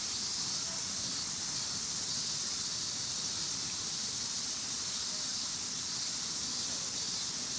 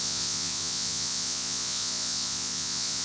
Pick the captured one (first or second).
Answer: first